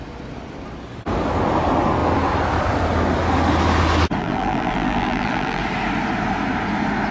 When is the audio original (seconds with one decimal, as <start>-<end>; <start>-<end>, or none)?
0.0-4.2; 5.6-7.1